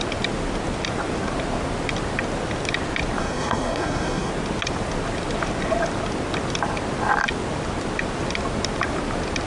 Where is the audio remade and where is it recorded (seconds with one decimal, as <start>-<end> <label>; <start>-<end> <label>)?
0.0-3.2 recorded; 3.2-4.3 remade; 4.3-9.5 recorded